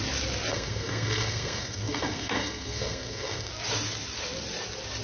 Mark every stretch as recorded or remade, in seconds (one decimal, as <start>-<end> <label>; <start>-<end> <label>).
0.0-0.5 recorded; 0.5-3.5 remade; 3.5-5.0 recorded